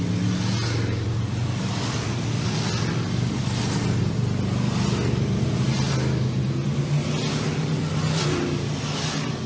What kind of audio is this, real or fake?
real